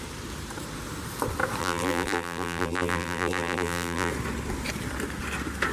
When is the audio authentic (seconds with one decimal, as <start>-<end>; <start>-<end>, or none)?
0.0-1.6; 4.1-5.7

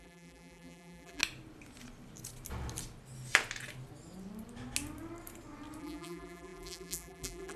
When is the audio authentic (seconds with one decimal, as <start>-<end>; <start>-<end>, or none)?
1.2-5.8

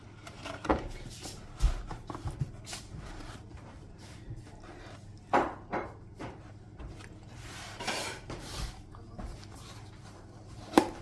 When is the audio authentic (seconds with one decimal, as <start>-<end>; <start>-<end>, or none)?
0.7-2.8; 6.7-7.8; 8.9-9.6

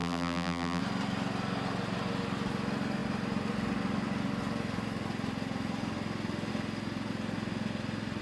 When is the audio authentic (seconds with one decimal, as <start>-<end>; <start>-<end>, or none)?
0.8-8.2

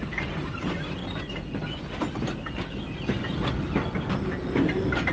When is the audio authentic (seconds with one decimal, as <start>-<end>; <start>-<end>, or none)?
1.0-4.1

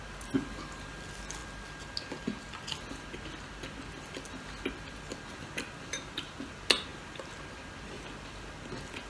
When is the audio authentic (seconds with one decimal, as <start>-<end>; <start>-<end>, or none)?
0.0-9.1